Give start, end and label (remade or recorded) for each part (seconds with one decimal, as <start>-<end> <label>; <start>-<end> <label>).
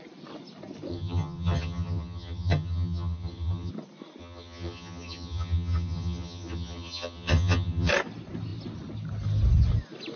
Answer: 0.0-0.9 recorded; 0.9-3.7 remade; 3.7-4.2 recorded; 4.2-7.9 remade; 7.9-10.2 recorded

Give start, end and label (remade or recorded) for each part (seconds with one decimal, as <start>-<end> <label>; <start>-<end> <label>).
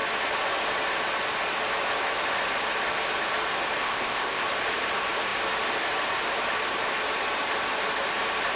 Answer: 0.0-3.8 recorded; 3.8-4.4 remade; 4.4-8.6 recorded